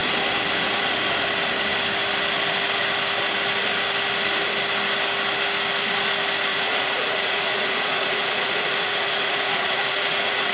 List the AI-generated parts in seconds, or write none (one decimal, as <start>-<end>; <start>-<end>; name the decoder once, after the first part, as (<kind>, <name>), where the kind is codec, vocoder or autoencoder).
6.5-10.5 (vocoder, Vocos)